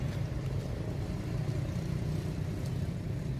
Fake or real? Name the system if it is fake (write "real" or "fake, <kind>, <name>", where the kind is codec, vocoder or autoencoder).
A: real